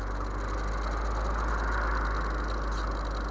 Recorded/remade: recorded